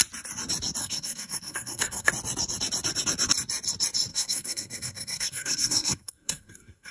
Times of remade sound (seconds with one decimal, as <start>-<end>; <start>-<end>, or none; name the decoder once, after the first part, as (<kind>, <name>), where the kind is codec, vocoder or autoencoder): 0.8-2.1 (codec, SNAC); 4.1-6.9